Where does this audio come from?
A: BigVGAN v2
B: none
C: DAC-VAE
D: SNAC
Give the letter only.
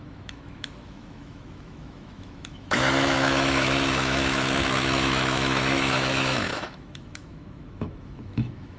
C